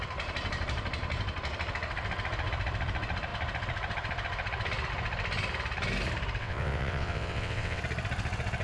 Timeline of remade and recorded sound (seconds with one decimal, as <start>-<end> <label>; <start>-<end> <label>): 0.0-6.4 recorded; 6.4-7.8 remade; 7.8-8.6 recorded